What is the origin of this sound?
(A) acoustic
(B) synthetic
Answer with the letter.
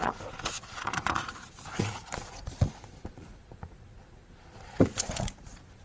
B